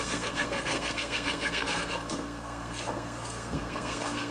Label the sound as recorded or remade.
remade